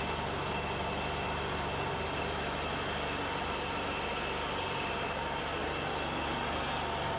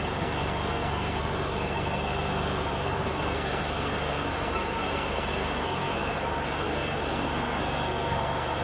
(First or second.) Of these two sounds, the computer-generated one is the second